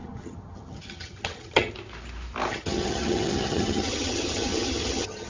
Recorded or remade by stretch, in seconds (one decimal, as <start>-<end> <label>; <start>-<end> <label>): 0.0-1.7 remade; 1.7-2.5 recorded; 2.5-5.3 remade